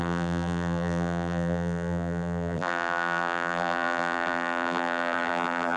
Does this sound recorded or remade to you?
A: remade